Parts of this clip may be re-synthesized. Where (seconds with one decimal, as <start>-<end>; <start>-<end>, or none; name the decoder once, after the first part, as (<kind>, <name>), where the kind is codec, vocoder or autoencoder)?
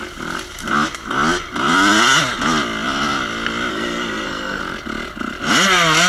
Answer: 3.7-4.6 (codec, SNAC)